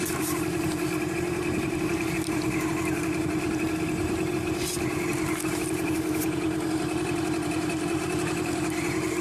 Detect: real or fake fake